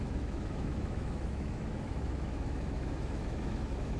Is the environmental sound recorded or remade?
remade